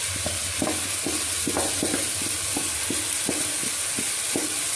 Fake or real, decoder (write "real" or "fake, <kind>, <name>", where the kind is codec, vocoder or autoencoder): real